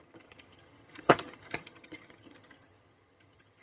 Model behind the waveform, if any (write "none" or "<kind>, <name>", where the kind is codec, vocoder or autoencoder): vocoder, HiFi-GAN